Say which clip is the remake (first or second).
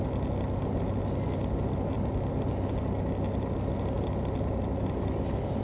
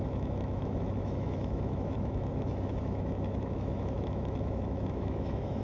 second